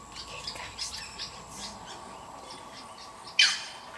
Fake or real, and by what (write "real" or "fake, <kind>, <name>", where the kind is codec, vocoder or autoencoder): real